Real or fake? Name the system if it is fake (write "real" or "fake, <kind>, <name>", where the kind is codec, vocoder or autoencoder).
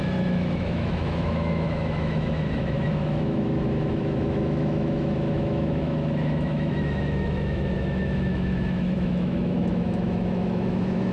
fake, autoencoder, DAC-VAE